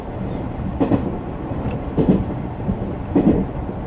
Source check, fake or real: real